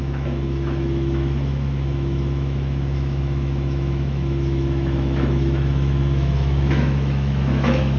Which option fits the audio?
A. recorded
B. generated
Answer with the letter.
B